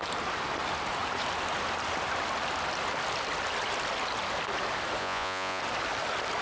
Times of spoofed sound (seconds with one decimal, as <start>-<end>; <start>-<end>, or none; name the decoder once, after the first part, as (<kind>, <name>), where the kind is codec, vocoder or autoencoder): 5.0-5.6 (vocoder, Vocos)